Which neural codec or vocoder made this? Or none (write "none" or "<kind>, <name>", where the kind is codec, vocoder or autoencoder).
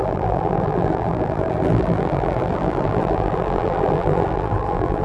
vocoder, BigVGAN v2